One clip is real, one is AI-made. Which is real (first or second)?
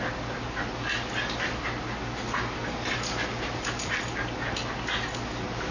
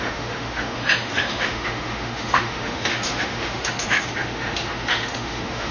first